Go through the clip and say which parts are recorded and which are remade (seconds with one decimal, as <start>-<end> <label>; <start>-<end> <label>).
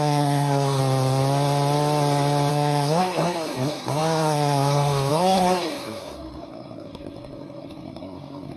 0.0-0.8 remade; 0.8-2.5 recorded; 2.5-8.6 remade